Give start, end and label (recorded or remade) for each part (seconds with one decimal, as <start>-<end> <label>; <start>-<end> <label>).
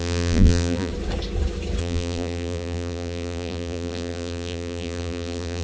0.0-0.9 remade; 0.9-1.8 recorded; 1.8-5.6 remade